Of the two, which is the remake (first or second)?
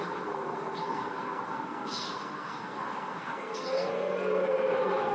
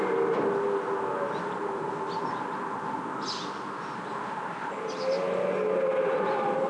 first